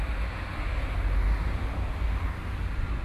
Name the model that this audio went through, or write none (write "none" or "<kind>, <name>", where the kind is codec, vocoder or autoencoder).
none